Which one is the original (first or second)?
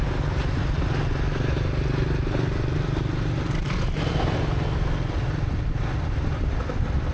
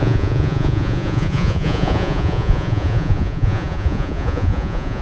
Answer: first